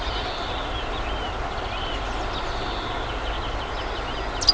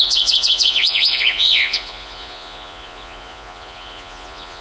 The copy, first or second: second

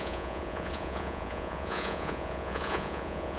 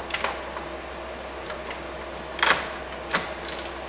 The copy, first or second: first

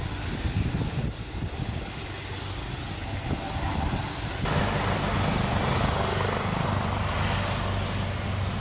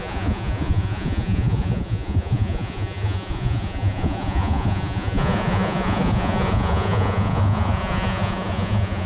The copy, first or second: second